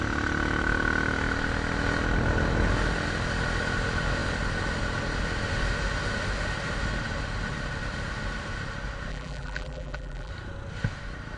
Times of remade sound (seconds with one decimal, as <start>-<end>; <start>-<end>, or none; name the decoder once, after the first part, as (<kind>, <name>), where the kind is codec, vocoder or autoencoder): 9.1-10.3 (vocoder, BigVGAN v2)

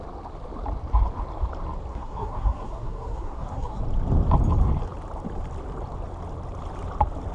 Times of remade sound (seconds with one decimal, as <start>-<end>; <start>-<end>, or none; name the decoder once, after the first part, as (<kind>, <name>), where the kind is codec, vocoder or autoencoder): 1.9-3.8 (codec, SNAC)

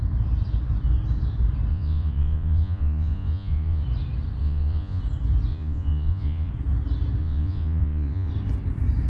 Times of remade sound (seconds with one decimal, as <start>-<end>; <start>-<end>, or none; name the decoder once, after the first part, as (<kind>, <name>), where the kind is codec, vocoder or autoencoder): 1.7-3.8 (vocoder, Vocos); 4.4-5.0; 5.5-6.5; 7.2-8.3

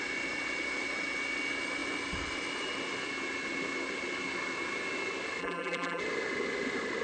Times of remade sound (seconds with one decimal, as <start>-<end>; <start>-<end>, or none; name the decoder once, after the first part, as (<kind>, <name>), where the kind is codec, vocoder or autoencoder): 5.4-6.0 (vocoder, BigVGAN v2)